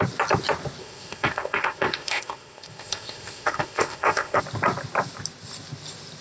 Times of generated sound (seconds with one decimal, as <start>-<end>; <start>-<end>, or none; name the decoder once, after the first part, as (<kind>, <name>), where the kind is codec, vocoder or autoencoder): 0.8-4.4 (codec, ZipCodec)